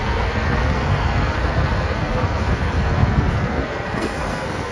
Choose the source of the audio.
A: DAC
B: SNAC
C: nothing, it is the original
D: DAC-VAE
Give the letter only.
B